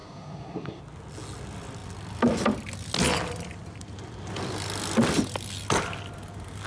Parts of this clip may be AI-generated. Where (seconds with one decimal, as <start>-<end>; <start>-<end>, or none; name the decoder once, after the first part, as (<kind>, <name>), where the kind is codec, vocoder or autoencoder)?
0.0-0.8 (codec, SNAC)

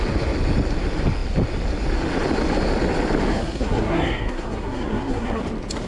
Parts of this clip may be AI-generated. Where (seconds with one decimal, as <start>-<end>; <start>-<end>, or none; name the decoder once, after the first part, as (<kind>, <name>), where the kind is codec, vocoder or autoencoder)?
3.3-5.4 (codec, SNAC)